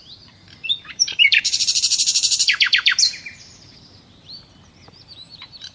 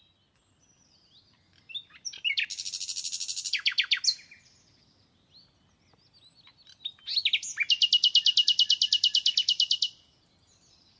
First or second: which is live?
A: second